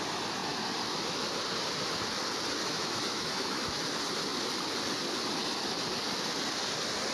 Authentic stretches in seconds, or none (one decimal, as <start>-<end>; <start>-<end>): 0.0-2.6; 3.8-7.1